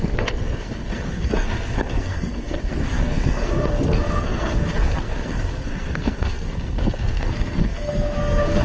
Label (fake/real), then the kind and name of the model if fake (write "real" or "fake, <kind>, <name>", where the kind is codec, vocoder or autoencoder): fake, codec, SNAC